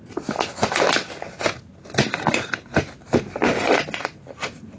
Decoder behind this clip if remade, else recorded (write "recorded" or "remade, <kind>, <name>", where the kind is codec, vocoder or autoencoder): recorded